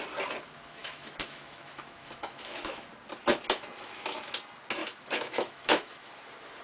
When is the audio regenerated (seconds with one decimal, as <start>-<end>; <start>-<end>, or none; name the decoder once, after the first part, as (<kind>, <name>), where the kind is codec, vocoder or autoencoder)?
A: 0.8-2.9 (autoencoder, DAC-VAE); 4.8-6.1